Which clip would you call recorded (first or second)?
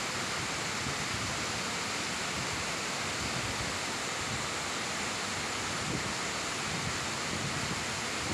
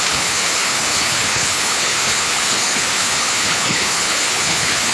first